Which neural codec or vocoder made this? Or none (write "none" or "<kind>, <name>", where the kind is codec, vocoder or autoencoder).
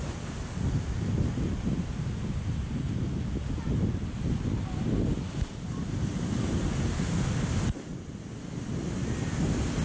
none